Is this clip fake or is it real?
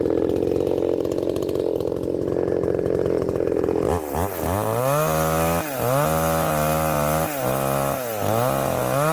real